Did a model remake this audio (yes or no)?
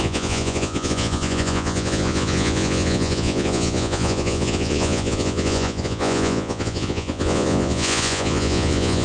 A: yes